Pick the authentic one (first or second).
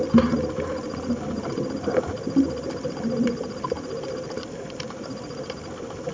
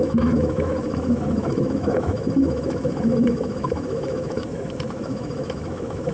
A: first